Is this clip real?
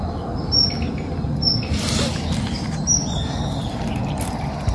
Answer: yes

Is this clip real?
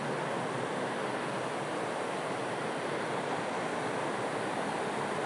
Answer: yes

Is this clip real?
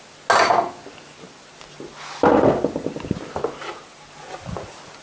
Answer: yes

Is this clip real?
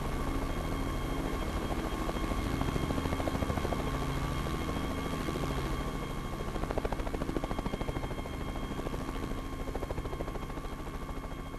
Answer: yes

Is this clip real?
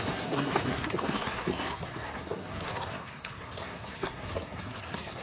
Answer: no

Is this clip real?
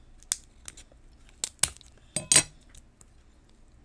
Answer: yes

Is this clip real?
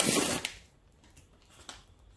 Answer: yes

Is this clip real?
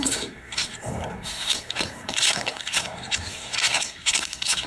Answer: no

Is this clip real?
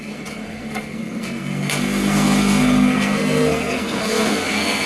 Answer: no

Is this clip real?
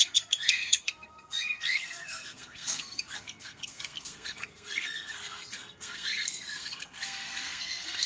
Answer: no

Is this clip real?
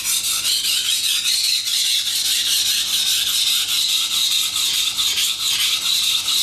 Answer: yes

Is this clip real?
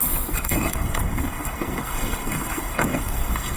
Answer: no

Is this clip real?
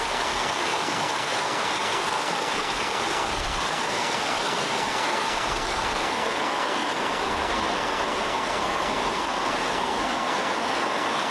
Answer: no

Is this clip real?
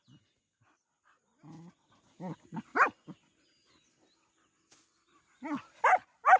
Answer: yes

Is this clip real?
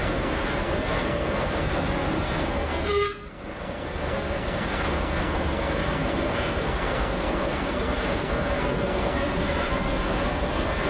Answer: no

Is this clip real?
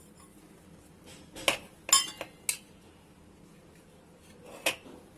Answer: yes